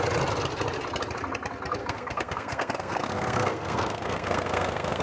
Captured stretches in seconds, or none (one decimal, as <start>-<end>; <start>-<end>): 0.0-1.8